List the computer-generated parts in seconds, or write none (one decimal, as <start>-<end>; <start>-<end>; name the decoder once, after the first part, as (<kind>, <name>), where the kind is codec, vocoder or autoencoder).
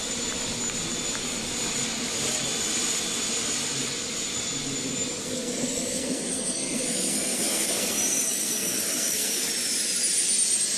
5.2-9.5 (codec, SNAC)